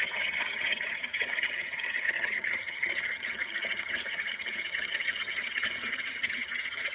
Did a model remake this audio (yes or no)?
yes